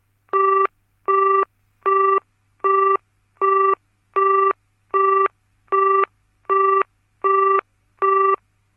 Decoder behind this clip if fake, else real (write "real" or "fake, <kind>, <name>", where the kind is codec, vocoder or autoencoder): real